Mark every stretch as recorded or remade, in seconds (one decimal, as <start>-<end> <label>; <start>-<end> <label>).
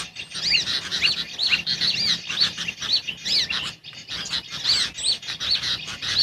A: 0.0-6.2 recorded